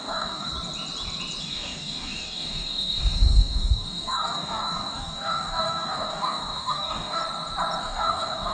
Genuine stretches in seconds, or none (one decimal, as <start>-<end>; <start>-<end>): 0.5-1.4; 7.2-7.8